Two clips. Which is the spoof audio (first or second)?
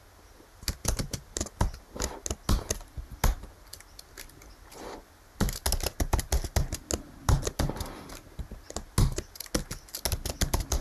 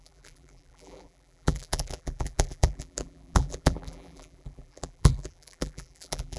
second